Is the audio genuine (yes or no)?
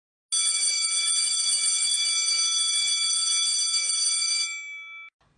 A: yes